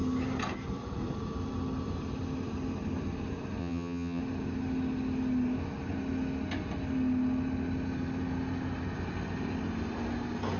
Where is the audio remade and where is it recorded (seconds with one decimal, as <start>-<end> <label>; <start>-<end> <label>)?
0.0-3.6 recorded; 3.6-4.2 remade; 4.2-10.6 recorded